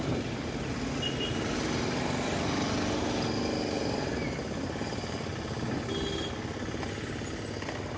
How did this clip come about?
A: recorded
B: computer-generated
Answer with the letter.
A